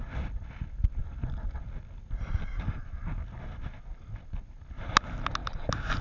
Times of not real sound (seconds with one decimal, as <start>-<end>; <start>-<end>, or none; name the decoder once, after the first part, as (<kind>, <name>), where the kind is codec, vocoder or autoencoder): none